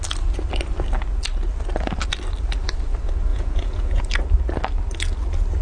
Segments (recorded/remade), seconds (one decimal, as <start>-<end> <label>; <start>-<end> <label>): 0.0-3.3 recorded; 3.3-4.0 remade; 4.0-5.6 recorded